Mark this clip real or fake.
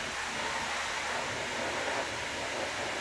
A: real